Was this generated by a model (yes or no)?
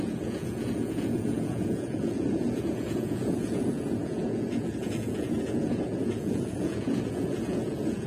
yes